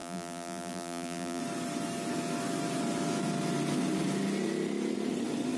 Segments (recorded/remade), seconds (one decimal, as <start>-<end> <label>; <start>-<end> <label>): 0.0-1.4 remade; 1.4-5.6 recorded